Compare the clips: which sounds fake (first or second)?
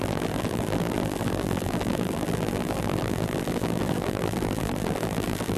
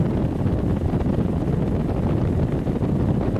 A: first